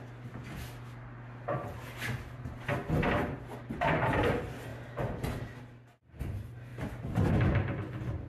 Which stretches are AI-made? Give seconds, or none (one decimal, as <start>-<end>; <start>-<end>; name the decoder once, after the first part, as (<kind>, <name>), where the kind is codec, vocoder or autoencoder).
6.7-7.3 (vocoder, BigVGAN v2)